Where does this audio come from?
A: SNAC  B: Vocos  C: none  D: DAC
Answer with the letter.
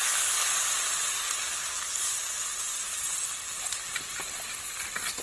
C